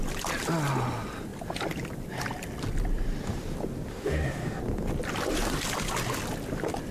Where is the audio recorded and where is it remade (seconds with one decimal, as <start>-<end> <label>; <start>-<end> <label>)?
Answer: 0.0-3.9 recorded; 3.9-4.6 remade; 4.6-6.9 recorded